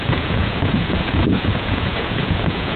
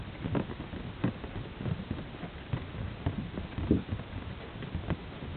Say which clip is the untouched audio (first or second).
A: second